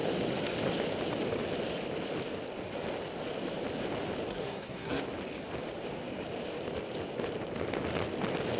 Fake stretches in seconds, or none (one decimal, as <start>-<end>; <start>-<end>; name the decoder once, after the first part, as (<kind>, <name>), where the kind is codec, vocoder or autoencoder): 4.3-5.0 (codec, SNAC)